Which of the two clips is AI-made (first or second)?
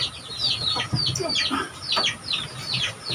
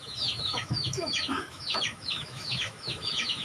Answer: second